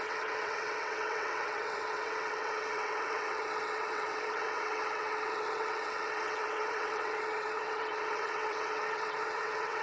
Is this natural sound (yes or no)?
no